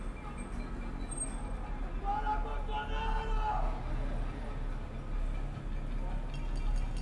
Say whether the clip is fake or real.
real